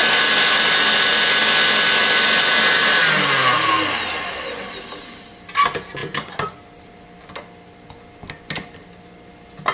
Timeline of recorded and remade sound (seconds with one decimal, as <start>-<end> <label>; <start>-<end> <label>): 0.0-9.7 recorded